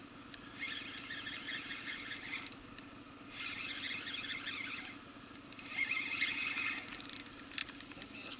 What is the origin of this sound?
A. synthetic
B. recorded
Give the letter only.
B